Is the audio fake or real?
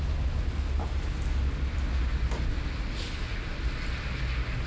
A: real